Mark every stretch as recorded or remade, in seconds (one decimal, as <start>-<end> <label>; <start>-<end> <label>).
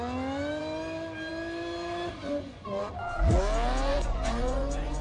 0.0-2.2 recorded; 2.2-2.8 remade; 2.8-3.9 recorded; 3.9-5.0 remade